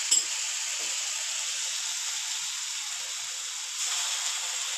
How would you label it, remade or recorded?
recorded